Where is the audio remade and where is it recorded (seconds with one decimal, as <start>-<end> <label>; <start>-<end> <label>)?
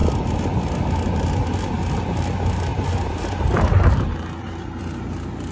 0.0-2.7 recorded; 2.7-4.8 remade; 4.8-5.5 recorded